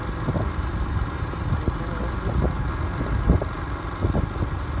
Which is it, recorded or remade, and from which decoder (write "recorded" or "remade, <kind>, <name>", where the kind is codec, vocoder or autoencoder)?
recorded